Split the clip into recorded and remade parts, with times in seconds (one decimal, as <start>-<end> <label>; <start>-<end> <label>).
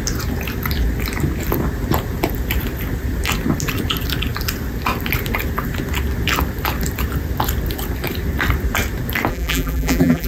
0.0-9.3 recorded; 9.3-10.3 remade